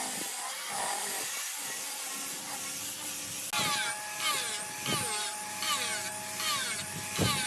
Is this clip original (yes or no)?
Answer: yes